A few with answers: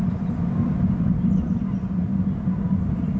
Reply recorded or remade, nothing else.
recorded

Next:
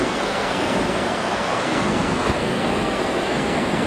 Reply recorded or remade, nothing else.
remade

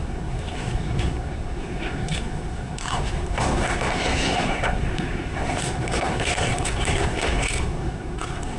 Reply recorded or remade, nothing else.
remade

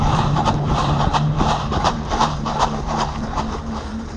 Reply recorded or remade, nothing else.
remade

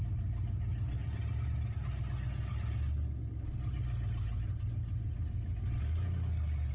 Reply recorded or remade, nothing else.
recorded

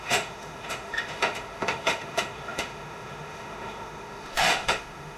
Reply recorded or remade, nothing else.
remade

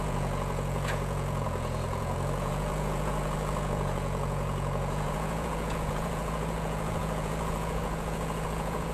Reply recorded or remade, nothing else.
remade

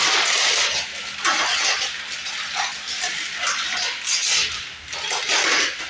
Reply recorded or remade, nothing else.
recorded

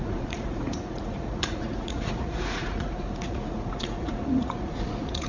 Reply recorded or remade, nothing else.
remade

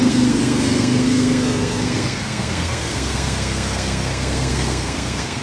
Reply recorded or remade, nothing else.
remade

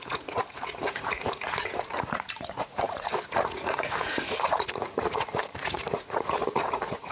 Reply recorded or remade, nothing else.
remade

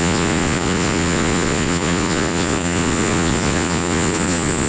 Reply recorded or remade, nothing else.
remade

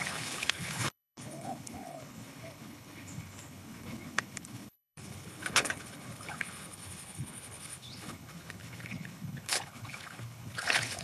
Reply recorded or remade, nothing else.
remade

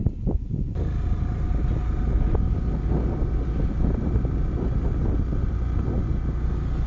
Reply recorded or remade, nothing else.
recorded